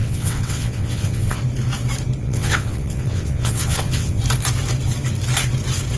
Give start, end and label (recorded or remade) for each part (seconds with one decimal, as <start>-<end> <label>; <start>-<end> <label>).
0.0-1.4 remade; 1.4-2.2 recorded; 2.2-4.2 remade; 4.2-6.0 recorded